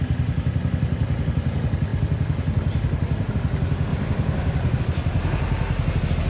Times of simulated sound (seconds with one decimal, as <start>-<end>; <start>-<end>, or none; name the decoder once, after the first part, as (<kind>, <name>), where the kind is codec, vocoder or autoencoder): 1.9-3.3 (vocoder, BigVGAN v2); 3.9-4.8